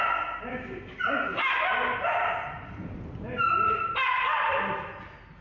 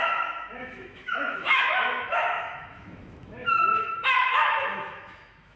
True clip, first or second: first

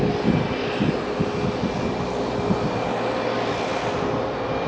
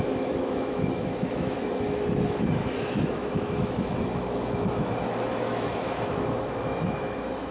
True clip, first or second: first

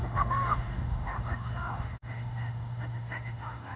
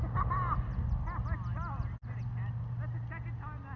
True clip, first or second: second